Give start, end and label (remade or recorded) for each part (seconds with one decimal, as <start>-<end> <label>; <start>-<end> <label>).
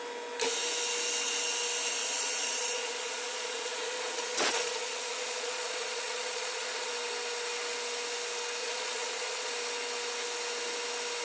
0.0-2.0 recorded; 2.0-6.9 remade; 6.9-8.6 recorded; 8.6-9.5 remade; 9.5-11.2 recorded